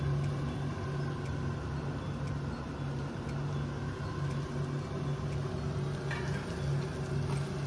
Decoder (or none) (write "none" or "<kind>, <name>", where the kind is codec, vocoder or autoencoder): none